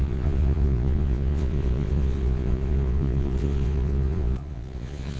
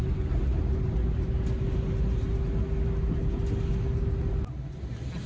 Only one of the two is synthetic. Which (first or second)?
first